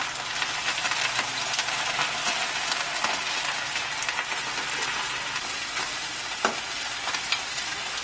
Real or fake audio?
real